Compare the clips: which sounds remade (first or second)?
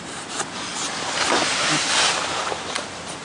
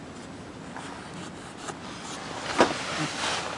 first